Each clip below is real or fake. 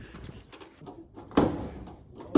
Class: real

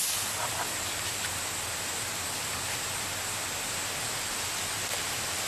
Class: real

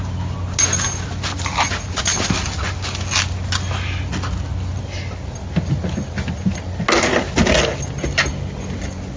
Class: real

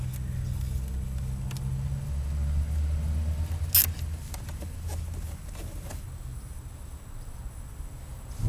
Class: real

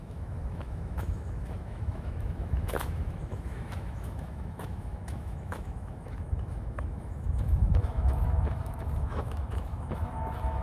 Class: fake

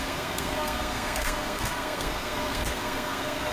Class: fake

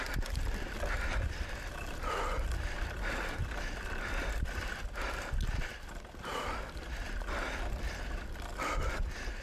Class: real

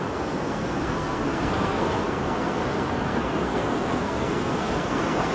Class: fake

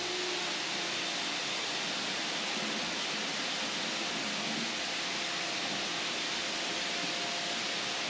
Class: real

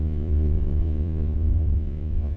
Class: fake